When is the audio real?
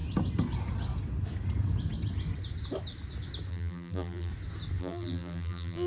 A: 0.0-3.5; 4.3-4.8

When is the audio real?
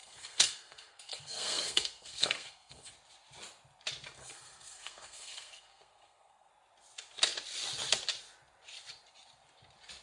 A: 2.9-4.2; 6.5-10.0